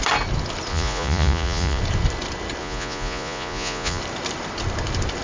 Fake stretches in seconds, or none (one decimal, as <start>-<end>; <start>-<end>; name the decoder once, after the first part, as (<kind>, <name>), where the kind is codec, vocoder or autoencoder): 0.7-1.8 (vocoder, Vocos); 2.6-4.0

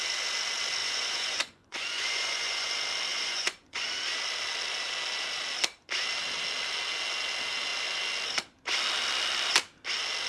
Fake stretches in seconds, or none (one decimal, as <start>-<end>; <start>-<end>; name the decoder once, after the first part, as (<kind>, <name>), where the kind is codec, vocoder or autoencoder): 0.8-2.7 (vocoder, Vocos); 3.1-3.9

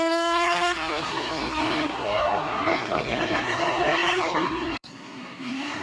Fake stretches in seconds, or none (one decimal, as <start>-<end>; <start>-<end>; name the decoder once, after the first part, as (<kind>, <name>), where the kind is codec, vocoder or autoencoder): 0.0-5.8 (codec, SNAC)

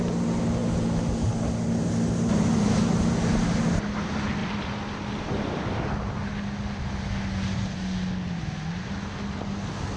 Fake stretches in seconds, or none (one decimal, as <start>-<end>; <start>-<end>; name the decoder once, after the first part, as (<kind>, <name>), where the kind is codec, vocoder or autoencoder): none

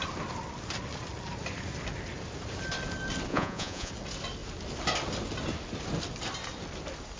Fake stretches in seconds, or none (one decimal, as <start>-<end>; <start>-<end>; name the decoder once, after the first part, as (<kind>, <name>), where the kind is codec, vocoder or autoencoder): 3.3-3.9 (vocoder, Vocos)

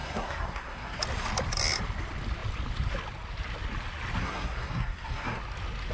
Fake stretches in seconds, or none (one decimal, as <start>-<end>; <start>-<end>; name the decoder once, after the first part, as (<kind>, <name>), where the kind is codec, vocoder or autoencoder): 0.0-1.0 (codec, SNAC); 4.2-5.4

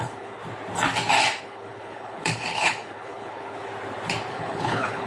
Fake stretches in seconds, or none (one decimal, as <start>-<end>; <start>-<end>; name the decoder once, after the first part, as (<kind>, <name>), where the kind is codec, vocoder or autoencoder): 0.0-0.4 (codec, HILCodec); 1.4-3.7; 4.3-5.1

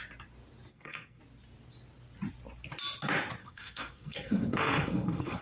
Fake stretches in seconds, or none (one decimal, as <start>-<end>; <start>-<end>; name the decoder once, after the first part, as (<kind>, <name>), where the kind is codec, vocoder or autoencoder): 0.7-1.2 (codec, SNAC); 3.4-5.4